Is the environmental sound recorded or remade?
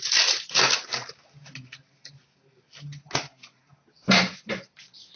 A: recorded